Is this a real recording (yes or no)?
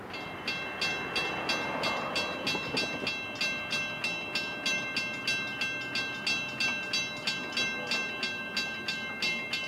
yes